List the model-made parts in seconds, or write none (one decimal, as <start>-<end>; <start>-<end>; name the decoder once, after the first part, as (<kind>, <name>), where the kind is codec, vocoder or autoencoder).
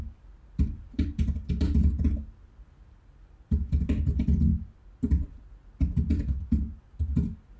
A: none